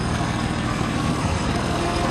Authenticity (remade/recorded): remade